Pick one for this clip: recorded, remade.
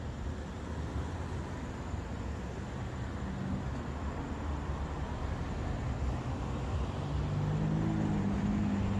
recorded